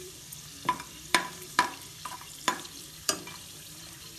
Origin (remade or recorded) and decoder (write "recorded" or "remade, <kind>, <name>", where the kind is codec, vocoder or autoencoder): remade, vocoder, BigVGAN v2